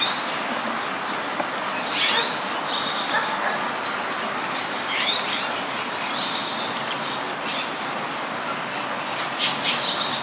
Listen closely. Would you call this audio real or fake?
real